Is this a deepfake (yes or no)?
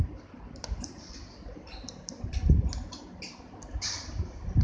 no